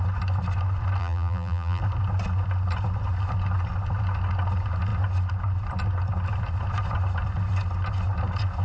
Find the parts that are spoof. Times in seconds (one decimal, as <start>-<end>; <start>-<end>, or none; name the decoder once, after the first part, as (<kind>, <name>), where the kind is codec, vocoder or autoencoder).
1.0-1.8 (vocoder, BigVGAN v2)